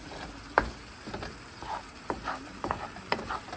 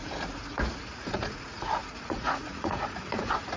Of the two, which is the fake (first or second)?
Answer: second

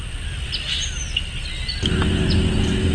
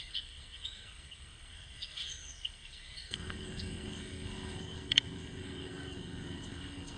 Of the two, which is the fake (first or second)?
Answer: second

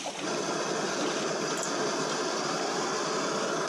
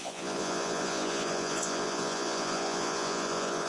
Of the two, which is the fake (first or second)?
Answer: second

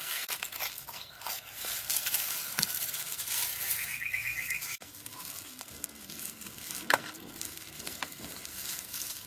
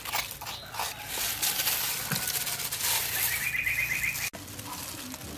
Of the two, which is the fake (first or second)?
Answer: first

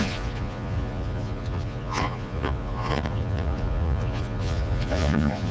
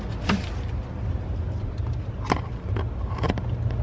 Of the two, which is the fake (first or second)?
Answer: first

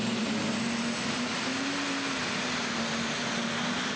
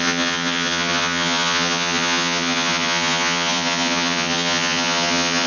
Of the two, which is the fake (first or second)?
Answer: second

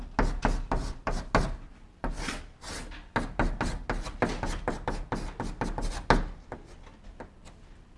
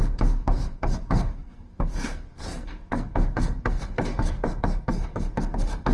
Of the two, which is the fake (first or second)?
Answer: second